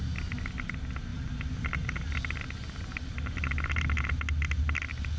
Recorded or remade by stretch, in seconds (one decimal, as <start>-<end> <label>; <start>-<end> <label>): 0.0-1.1 recorded; 1.1-1.7 remade; 1.7-3.1 recorded; 3.1-4.1 remade; 4.1-5.2 recorded

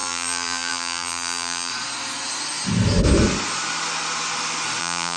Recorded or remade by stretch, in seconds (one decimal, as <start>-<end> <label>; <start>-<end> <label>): 0.0-1.7 remade; 1.7-4.8 recorded; 4.8-5.2 remade

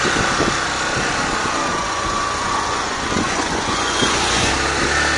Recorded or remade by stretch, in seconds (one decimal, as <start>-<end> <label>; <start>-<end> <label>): 0.0-1.7 recorded; 1.7-4.5 remade; 4.5-5.2 recorded

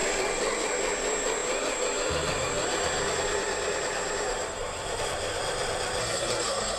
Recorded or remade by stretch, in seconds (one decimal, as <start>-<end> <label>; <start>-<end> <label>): 0.0-6.0 recorded; 6.0-6.8 remade